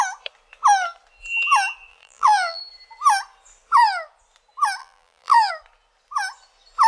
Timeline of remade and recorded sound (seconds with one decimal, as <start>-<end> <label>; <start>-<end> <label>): 0.0-1.9 recorded; 1.9-2.6 remade; 2.6-4.8 recorded; 4.8-5.5 remade; 5.5-6.9 recorded

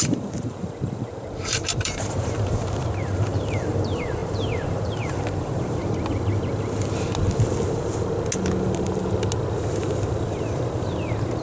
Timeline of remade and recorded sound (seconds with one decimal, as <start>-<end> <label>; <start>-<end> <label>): 0.0-5.8 remade; 5.8-9.8 recorded; 9.8-11.4 remade

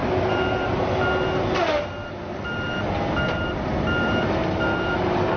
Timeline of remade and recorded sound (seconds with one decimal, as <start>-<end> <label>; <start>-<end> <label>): 0.0-3.2 recorded; 3.2-4.4 remade; 4.4-4.9 recorded; 4.9-5.4 remade